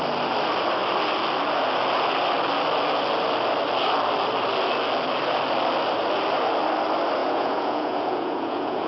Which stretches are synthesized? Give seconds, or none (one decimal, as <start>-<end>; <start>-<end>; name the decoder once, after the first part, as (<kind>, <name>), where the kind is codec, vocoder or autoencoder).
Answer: 7.2-8.9 (vocoder, Vocos)